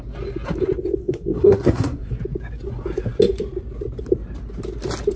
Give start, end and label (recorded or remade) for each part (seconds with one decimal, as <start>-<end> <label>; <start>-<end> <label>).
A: 0.0-1.0 recorded; 1.0-2.2 remade; 2.2-5.2 recorded